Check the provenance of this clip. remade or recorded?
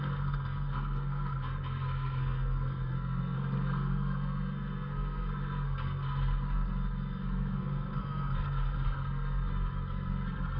remade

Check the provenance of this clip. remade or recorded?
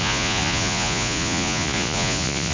remade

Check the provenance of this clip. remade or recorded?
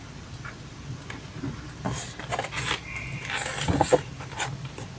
recorded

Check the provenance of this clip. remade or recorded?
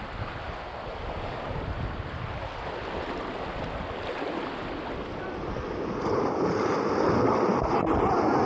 recorded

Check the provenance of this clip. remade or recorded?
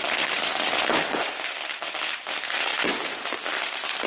recorded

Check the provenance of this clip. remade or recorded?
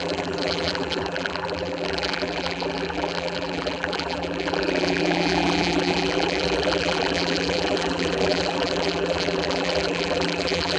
remade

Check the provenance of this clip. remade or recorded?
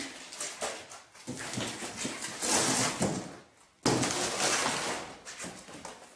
recorded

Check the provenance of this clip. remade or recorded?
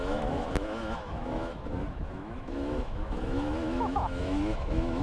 remade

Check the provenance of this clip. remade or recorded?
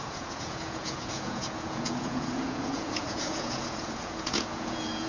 remade